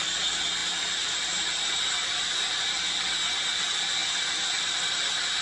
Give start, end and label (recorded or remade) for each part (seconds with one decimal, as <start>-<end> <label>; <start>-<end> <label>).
0.0-5.4 recorded

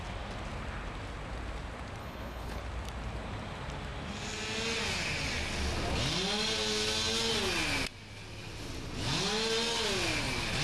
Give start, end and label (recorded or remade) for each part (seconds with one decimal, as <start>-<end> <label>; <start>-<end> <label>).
0.0-2.0 recorded; 2.0-2.6 remade; 2.6-10.6 recorded

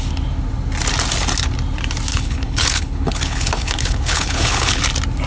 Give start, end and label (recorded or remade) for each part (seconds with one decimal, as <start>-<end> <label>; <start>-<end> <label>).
0.0-2.1 recorded; 2.1-4.8 remade; 4.8-5.3 recorded

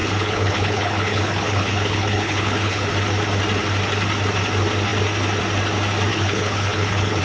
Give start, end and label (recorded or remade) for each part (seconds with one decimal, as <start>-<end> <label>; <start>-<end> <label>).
0.0-2.9 remade; 2.9-6.1 recorded; 6.1-7.2 remade

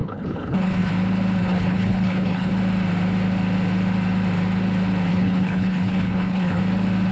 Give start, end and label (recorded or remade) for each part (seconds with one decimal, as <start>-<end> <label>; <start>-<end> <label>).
0.0-0.9 remade; 0.9-1.4 recorded; 1.4-2.5 remade; 2.5-5.1 recorded; 5.1-6.6 remade; 6.6-7.1 recorded

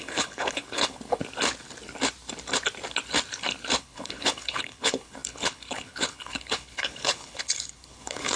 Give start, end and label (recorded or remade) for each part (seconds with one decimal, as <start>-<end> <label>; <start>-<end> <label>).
0.0-1.2 remade; 1.2-3.8 recorded; 3.8-8.4 remade

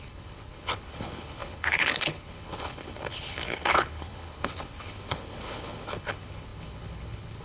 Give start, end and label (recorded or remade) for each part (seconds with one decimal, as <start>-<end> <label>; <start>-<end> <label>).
0.0-7.4 remade